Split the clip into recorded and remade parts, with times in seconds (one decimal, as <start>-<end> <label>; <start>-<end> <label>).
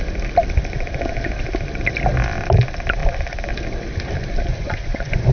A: 0.0-4.5 recorded; 4.5-5.3 remade